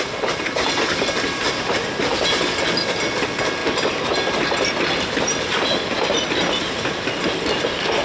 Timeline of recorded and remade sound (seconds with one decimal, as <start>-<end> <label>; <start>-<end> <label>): 0.0-8.0 recorded